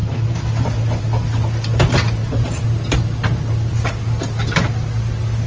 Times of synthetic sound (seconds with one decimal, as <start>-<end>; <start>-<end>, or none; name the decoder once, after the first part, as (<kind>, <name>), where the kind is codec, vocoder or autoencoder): none